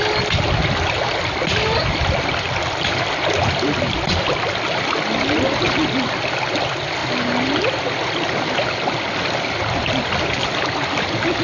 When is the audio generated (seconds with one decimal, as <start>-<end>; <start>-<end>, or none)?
none